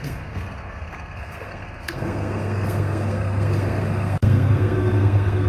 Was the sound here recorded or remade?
remade